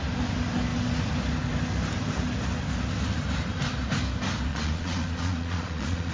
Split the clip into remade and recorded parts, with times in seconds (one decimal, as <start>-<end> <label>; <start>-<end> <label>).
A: 0.0-4.5 recorded; 4.5-6.1 remade